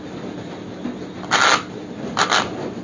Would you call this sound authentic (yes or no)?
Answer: yes